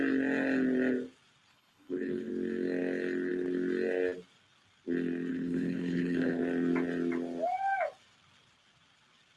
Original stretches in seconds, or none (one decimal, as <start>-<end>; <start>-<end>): 0.0-1.5; 2.3-5.3; 6.4-9.4